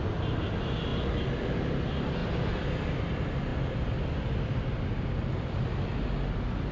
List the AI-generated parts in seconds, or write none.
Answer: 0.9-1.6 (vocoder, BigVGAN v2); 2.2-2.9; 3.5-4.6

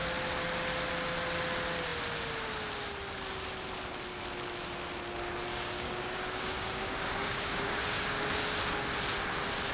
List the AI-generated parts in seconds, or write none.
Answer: 5.5-8.2 (codec, DAC)

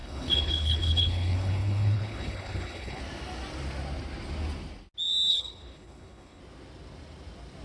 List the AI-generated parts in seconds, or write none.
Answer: 0.0-3.0 (codec, HILCodec); 5.3-6.4